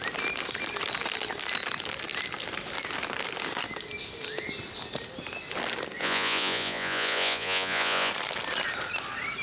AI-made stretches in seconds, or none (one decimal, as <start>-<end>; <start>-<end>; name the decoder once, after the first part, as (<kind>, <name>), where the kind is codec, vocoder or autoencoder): 6.0-8.1 (vocoder, Vocos)